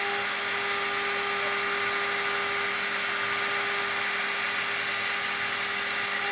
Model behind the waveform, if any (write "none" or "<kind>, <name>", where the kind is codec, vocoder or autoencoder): none